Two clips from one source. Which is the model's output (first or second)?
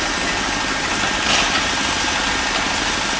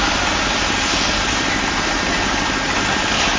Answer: second